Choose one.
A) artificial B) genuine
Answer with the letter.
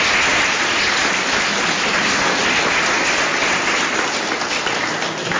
B